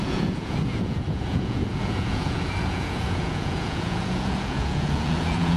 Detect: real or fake fake